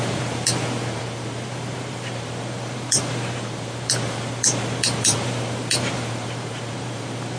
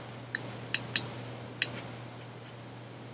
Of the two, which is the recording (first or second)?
second